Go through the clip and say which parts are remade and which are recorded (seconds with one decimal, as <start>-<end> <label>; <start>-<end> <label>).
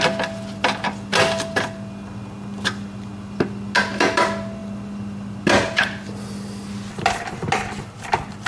0.0-8.5 recorded